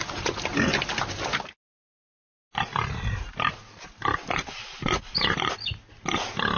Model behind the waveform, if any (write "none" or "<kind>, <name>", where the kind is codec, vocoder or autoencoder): none